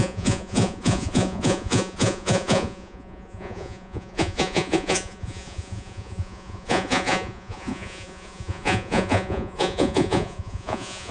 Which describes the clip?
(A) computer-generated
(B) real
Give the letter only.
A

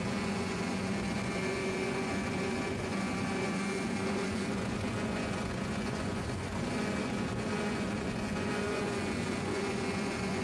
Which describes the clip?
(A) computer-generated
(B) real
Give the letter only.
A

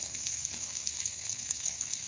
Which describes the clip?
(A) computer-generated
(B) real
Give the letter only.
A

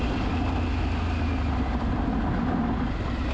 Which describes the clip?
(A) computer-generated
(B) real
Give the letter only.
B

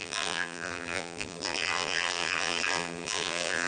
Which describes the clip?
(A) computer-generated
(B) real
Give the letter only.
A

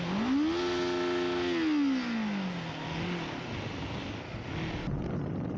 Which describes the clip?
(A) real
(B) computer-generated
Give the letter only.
A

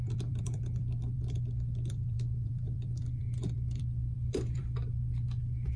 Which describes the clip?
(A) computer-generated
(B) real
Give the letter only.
A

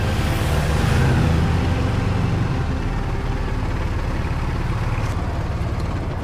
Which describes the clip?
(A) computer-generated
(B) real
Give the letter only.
B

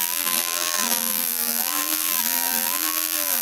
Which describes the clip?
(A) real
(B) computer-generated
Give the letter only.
B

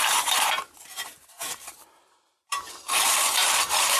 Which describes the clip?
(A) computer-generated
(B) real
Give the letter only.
A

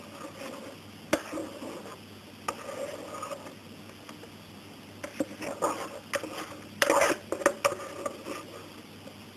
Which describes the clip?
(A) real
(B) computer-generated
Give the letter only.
A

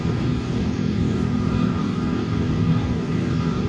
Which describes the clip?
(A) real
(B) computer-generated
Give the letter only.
B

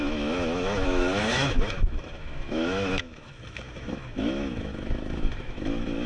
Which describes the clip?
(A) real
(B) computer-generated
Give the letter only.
B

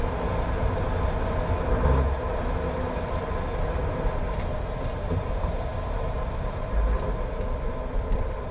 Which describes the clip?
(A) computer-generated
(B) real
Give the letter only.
B